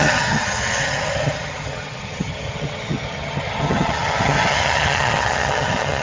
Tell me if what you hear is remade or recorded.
remade